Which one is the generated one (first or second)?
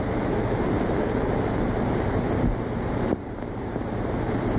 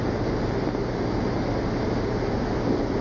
first